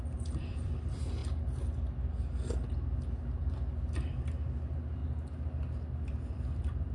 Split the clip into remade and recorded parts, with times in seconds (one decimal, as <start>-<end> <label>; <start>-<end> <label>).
0.0-1.2 remade; 1.2-3.4 recorded; 3.4-5.0 remade; 5.0-5.9 recorded; 5.9-6.9 remade